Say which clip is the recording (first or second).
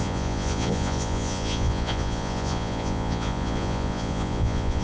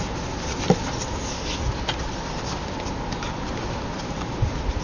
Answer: second